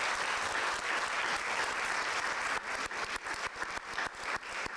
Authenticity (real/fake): real